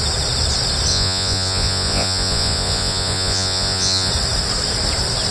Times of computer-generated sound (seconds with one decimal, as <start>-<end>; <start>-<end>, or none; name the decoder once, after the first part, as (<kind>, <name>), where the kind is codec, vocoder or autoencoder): 0.9-4.1 (vocoder, Vocos)